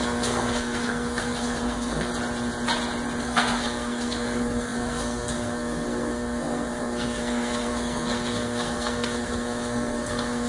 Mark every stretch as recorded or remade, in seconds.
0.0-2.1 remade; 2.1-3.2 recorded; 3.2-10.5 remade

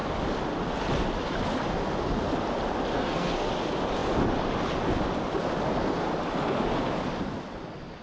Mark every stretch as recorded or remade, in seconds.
0.0-2.9 recorded; 2.9-3.5 remade; 3.5-8.0 recorded

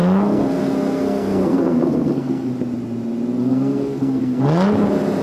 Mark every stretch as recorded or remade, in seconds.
0.0-2.5 remade; 2.5-3.4 recorded; 3.4-4.4 remade; 4.4-5.2 recorded

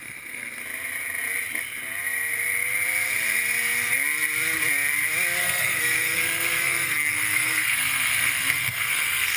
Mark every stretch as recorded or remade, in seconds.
0.0-0.6 remade; 0.6-5.4 recorded; 5.4-9.4 remade

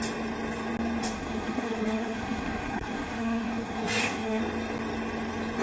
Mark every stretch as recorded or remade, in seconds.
0.0-1.0 recorded; 1.0-4.4 remade; 4.4-5.6 recorded